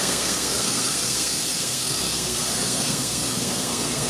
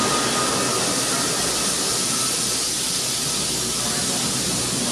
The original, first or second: second